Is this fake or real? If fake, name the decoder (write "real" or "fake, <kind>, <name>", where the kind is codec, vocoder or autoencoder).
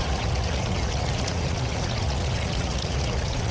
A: fake, vocoder, Vocos